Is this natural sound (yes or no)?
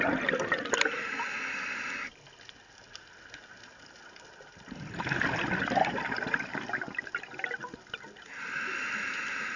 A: yes